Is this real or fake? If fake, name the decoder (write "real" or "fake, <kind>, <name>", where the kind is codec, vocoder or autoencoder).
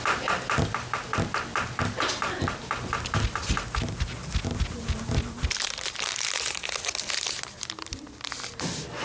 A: real